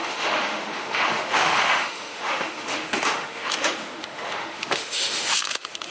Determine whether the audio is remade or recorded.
remade